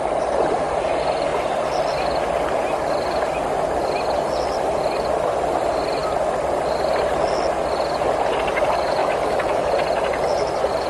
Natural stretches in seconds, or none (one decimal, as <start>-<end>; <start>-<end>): 0.0-9.0; 9.7-10.9